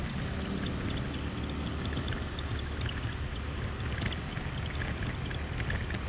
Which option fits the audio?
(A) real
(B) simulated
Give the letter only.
A